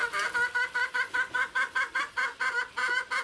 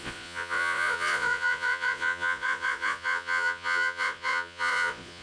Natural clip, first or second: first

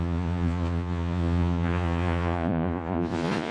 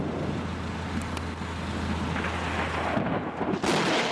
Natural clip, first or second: second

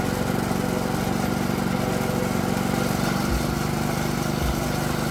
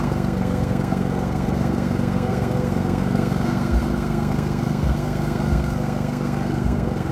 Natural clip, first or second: first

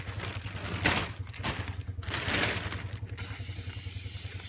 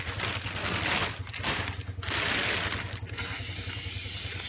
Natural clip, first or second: second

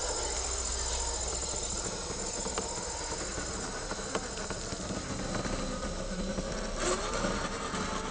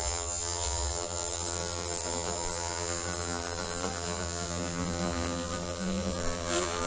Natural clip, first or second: first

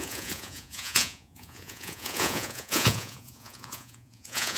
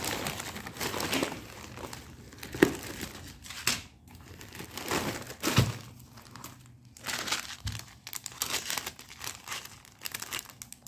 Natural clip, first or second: second